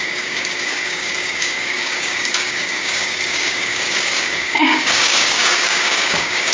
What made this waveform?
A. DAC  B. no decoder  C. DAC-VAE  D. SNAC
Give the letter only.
A